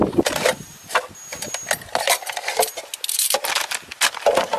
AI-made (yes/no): no